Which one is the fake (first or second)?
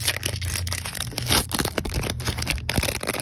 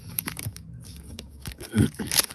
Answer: second